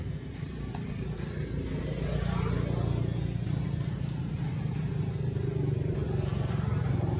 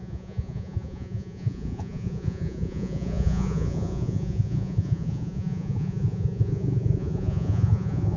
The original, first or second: first